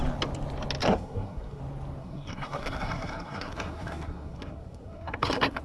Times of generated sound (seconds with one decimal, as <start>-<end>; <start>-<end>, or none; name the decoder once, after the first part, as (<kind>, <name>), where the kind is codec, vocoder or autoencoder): 0.8-1.6 (codec, SNAC); 2.0-5.6